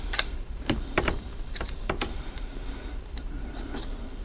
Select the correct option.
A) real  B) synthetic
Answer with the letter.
B